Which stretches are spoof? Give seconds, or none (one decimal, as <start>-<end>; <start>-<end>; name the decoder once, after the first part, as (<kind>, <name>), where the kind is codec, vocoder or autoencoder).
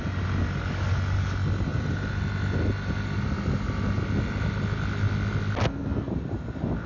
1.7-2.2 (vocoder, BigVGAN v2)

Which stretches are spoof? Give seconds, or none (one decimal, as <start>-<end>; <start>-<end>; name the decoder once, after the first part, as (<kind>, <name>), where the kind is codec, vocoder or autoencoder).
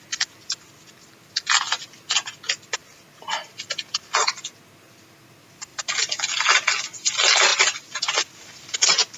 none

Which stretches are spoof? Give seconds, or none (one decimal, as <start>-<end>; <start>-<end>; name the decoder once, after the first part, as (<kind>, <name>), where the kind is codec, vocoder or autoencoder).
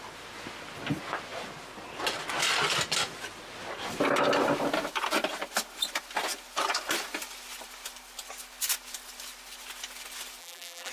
10.4-10.9 (vocoder, BigVGAN v2)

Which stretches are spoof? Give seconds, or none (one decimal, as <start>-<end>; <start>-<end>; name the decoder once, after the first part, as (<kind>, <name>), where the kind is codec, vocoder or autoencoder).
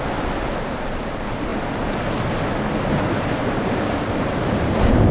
0.0-1.5 (vocoder, BigVGAN v2); 3.4-5.1